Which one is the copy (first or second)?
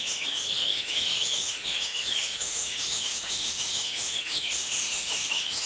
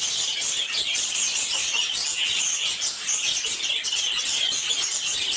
first